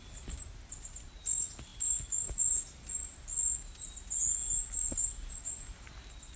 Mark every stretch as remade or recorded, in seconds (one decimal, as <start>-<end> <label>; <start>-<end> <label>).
0.0-6.4 recorded